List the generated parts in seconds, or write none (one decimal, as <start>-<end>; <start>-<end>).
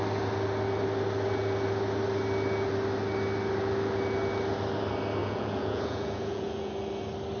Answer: 5.2-6.7